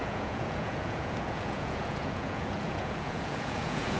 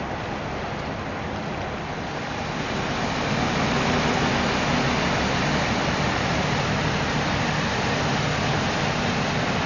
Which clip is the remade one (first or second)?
first